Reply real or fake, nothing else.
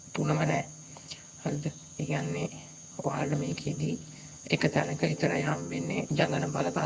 fake